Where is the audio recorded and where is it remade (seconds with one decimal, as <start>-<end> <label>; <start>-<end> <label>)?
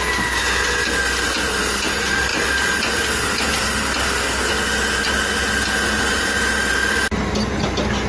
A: 0.0-8.1 recorded